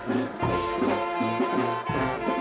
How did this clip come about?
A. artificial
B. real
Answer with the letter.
B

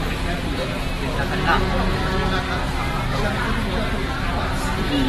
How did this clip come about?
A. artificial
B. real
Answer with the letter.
B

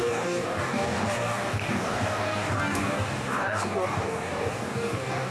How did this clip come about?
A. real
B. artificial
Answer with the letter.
B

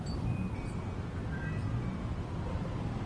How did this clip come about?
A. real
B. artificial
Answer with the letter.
B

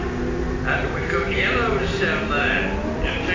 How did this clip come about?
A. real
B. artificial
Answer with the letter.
A